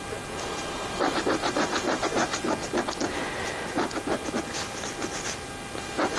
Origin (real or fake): real